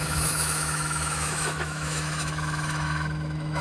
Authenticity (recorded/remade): remade